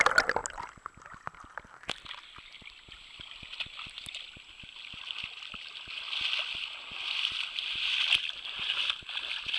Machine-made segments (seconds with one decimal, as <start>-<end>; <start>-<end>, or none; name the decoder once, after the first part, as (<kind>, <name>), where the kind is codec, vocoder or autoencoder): none